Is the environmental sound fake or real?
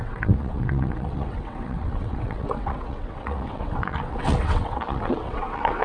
fake